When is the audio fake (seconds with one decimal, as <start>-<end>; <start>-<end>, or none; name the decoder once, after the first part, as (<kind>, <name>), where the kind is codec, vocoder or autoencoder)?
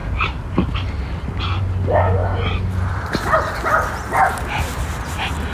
none